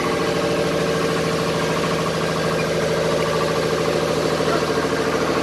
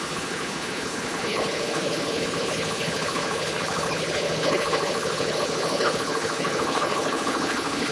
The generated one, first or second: second